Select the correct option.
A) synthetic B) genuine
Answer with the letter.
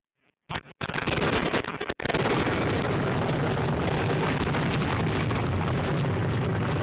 B